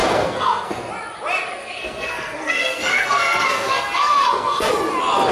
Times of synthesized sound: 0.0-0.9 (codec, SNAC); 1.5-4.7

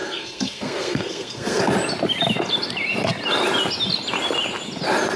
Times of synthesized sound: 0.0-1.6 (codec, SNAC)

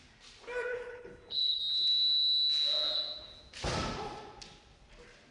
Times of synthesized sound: 0.7-1.6 (codec, HILCodec)